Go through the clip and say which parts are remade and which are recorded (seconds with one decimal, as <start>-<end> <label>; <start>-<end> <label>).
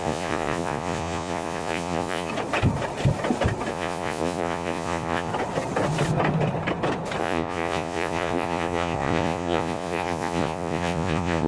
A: 0.0-2.3 remade; 2.3-3.7 recorded; 3.7-5.3 remade; 5.3-7.2 recorded; 7.2-11.5 remade